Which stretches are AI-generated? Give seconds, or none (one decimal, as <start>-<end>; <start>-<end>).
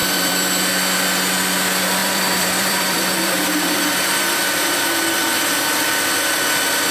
0.0-0.6; 2.0-6.1